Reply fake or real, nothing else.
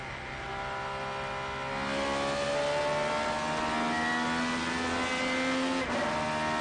real